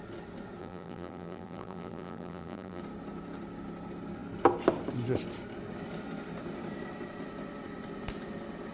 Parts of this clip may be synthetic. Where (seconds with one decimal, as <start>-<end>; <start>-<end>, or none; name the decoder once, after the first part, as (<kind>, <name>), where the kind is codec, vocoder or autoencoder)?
0.6-2.8 (vocoder, BigVGAN v2)